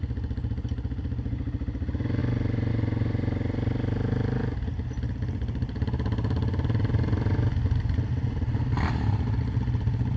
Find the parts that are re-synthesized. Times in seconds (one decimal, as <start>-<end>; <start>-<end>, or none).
none